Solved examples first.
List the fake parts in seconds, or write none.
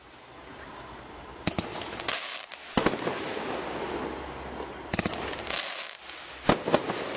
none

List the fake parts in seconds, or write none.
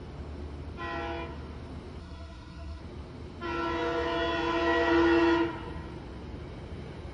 2.0-2.8 (codec, SNAC)